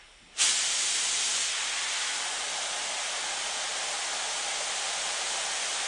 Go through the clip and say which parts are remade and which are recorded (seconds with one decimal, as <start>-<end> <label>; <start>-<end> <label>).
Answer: 0.0-5.9 recorded